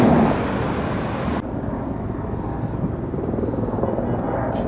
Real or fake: real